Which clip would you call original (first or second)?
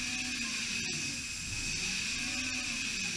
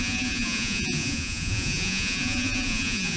first